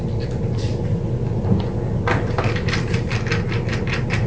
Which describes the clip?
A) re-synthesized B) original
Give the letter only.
B